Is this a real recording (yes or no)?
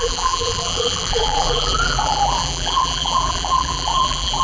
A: no